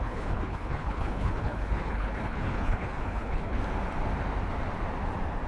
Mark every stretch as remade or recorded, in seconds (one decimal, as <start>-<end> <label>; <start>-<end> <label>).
0.0-3.6 remade; 3.6-5.5 recorded